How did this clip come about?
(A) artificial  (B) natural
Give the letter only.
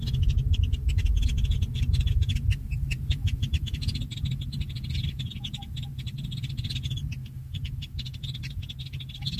B